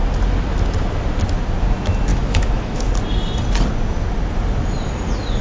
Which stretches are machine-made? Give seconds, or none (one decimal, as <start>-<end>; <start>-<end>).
2.1-2.9